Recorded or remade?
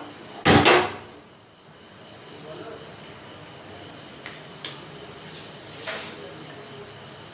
recorded